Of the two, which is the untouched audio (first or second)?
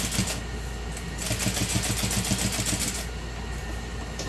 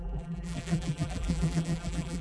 first